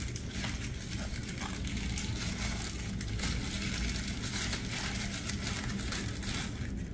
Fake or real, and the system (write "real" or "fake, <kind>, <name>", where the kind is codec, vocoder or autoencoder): real